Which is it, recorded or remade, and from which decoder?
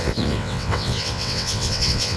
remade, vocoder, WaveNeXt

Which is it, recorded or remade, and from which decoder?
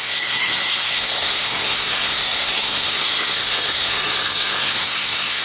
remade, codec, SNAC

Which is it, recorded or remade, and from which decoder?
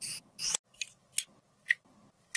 recorded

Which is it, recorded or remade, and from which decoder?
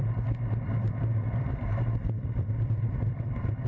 remade, vocoder, BigVGAN v2